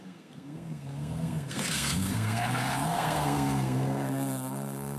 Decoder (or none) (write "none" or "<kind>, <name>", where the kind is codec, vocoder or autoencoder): codec, SNAC